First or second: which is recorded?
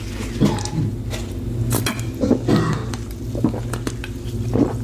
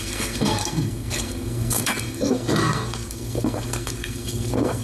first